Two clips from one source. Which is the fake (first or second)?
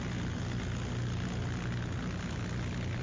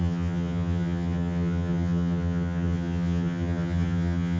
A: second